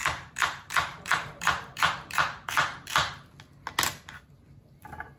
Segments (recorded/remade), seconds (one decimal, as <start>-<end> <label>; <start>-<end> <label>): 0.0-3.1 remade; 3.1-5.2 recorded